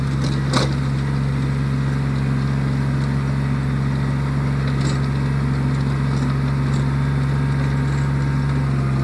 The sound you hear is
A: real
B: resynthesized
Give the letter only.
A